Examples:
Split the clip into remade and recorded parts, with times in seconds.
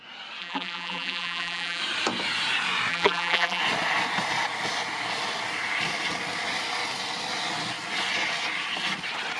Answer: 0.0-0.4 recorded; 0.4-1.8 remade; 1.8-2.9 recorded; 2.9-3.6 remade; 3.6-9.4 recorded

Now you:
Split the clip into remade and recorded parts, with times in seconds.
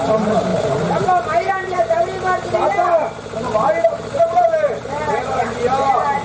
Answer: 0.0-4.8 recorded; 4.8-5.7 remade; 5.7-6.2 recorded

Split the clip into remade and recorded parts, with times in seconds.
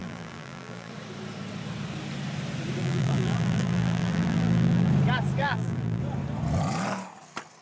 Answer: 0.0-0.9 remade; 0.9-2.8 recorded; 2.8-4.9 remade; 4.9-5.4 recorded; 5.4-6.0 remade; 6.0-7.6 recorded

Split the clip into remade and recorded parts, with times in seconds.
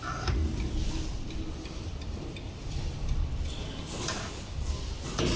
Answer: 0.0-5.4 recorded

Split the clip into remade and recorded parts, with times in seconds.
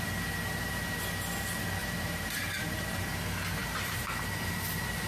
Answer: 0.0-1.8 recorded; 1.8-2.6 remade; 2.6-3.6 recorded; 3.6-4.5 remade; 4.5-5.1 recorded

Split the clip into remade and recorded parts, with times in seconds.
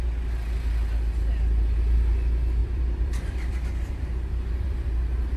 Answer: 0.0-2.6 recorded; 2.6-5.4 remade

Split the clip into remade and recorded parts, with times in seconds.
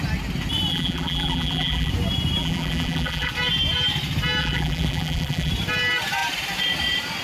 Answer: 0.0-0.7 recorded; 0.7-1.9 remade; 1.9-2.4 recorded; 2.4-3.3 remade; 3.3-4.4 recorded; 4.4-5.5 remade; 5.5-7.2 recorded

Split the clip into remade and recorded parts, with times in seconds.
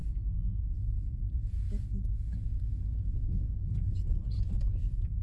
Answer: 0.0-0.7 recorded; 0.7-1.4 remade; 1.4-4.5 recorded; 4.5-5.2 remade